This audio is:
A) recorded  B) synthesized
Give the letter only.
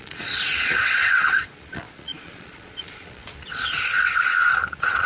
B